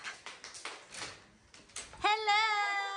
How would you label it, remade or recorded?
recorded